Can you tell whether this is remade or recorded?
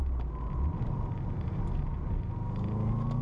recorded